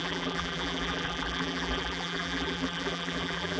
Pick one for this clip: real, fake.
fake